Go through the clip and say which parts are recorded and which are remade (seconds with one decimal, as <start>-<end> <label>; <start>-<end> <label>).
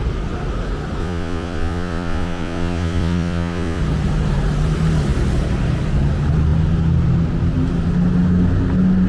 0.0-1.0 recorded; 1.0-3.8 remade; 3.8-9.1 recorded